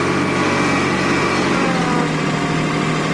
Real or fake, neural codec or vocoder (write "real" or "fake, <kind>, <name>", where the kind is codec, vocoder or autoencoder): real